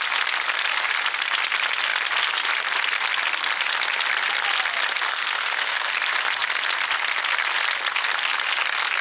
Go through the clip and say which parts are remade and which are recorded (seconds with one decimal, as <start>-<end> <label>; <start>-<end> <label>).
0.0-5.1 recorded; 5.1-5.9 remade; 5.9-9.0 recorded